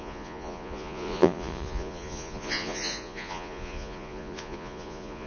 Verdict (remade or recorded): remade